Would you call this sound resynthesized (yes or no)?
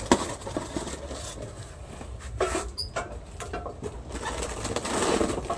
no